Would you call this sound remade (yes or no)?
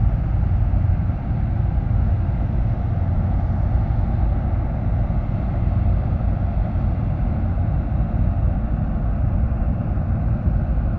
no